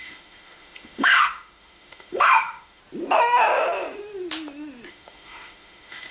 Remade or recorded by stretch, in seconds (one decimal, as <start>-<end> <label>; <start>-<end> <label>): 0.0-2.8 remade; 2.8-4.9 recorded; 4.9-6.1 remade